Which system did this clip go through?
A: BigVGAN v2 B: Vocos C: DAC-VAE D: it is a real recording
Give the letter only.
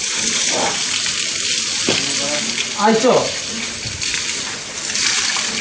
D